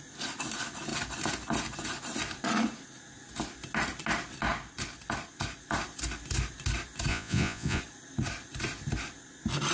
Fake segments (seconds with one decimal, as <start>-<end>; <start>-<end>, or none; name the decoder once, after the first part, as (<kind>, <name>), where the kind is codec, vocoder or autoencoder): 7.1-7.8 (vocoder, Vocos)